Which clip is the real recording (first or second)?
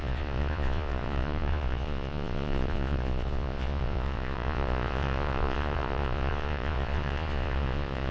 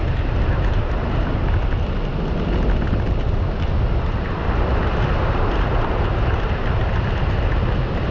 second